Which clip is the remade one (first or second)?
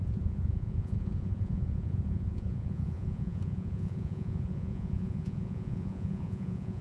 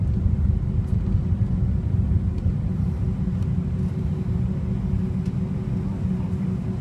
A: first